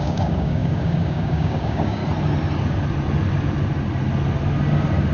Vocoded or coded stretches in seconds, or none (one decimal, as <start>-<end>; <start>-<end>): 0.0-2.0